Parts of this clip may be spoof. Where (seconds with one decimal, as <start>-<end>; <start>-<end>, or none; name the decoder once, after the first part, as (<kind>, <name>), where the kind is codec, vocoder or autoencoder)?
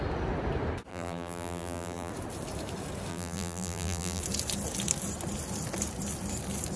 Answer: 0.9-2.1 (vocoder, BigVGAN v2); 3.1-4.2